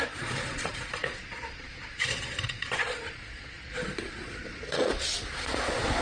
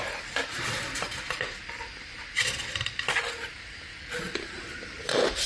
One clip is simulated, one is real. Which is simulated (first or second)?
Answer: first